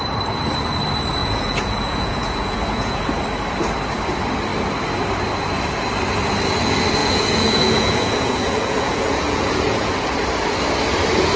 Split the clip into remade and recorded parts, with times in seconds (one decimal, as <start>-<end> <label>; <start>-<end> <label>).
0.0-1.2 recorded; 1.2-3.0 remade; 3.0-7.0 recorded; 7.0-9.9 remade; 9.9-11.4 recorded

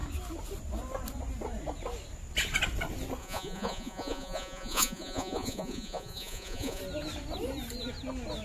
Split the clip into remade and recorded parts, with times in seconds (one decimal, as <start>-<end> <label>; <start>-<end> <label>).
0.0-3.2 recorded; 3.2-6.8 remade; 6.8-8.4 recorded